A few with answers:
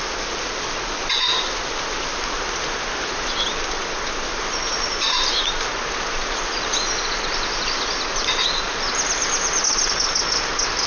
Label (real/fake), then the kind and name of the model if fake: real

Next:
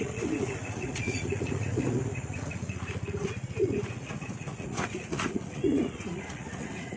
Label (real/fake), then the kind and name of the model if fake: fake, vocoder, Vocos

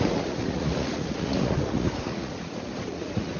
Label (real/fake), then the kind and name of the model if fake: fake, vocoder, Vocos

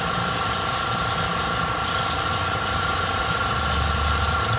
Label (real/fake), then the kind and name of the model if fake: real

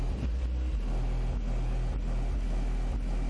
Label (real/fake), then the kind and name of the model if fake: real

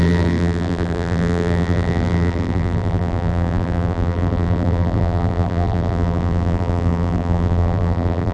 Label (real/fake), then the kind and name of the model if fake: fake, vocoder, BigVGAN v2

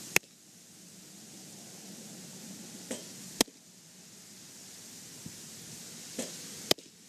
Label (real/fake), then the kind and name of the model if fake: real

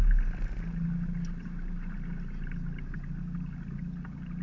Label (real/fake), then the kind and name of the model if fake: real